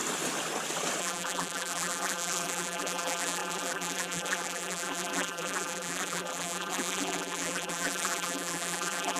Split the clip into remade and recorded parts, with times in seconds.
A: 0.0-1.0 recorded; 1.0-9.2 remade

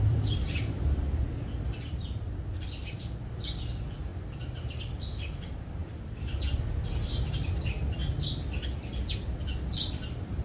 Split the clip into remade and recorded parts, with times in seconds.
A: 0.0-5.8 remade; 5.8-7.2 recorded; 7.2-8.0 remade; 8.0-10.4 recorded

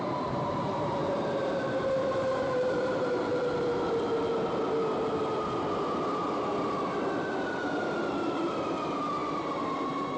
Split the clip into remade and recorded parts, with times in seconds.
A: 0.0-3.3 remade; 3.3-7.3 recorded; 7.3-10.2 remade

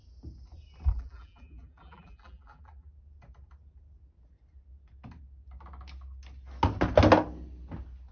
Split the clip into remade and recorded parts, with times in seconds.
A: 0.0-0.9 recorded; 0.9-2.9 remade; 2.9-8.1 recorded

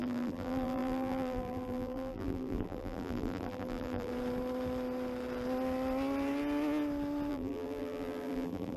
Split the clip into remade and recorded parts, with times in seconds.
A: 0.0-4.1 remade; 4.1-7.3 recorded; 7.3-8.8 remade